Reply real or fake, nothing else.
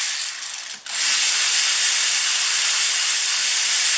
real